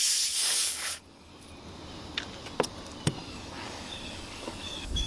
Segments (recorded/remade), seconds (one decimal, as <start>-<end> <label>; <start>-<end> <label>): 0.0-1.3 remade; 1.3-3.3 recorded; 3.3-5.1 remade